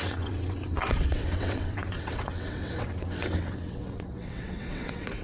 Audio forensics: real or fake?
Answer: fake